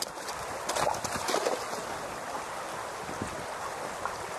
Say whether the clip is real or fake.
real